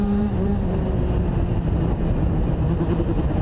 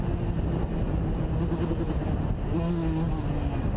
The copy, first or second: first